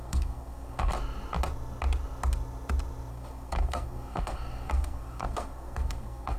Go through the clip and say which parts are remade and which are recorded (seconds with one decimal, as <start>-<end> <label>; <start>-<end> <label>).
0.0-0.9 remade; 0.9-3.1 recorded; 3.1-6.4 remade